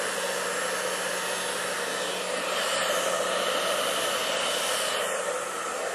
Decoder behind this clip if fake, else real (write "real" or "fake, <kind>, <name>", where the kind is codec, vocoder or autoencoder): real